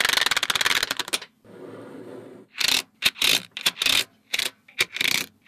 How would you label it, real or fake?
real